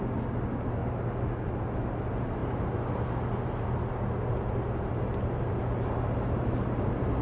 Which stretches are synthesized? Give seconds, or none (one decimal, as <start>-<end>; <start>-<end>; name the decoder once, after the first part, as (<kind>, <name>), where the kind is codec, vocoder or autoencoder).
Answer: none

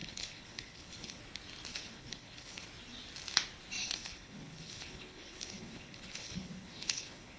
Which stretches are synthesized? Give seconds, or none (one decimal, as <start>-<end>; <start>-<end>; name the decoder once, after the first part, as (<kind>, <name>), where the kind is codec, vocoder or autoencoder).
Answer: 0.0-1.2 (codec, HILCodec); 1.7-2.7; 3.8-7.4

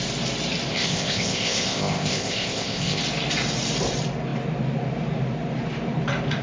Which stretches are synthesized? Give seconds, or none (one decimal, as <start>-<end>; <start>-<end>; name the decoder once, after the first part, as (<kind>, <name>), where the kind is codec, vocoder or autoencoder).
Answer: 0.7-3.0 (codec, ZipCodec)

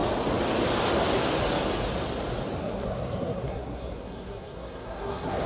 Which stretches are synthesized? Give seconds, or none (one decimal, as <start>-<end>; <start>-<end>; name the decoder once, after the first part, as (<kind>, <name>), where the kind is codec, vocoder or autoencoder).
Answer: 2.6-5.5 (codec, SNAC)

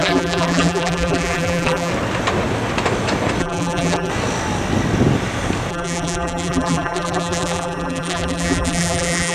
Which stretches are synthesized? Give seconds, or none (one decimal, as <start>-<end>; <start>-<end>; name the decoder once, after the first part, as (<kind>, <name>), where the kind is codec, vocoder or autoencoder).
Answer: 0.0-1.9 (vocoder, BigVGAN v2); 3.4-4.1; 5.7-9.3